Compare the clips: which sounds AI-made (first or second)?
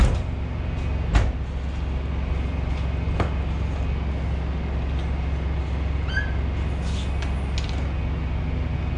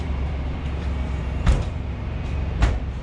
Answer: second